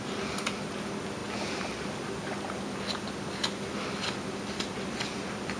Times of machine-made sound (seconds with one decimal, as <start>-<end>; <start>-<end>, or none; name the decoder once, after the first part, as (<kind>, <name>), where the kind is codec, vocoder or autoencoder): none